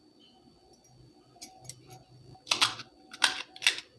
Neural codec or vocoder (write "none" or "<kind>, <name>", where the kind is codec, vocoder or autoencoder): none